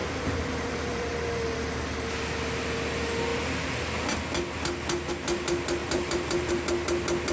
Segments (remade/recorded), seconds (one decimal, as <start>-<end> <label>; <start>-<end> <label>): 0.0-1.1 remade; 1.1-5.8 recorded; 5.8-6.5 remade; 6.5-7.3 recorded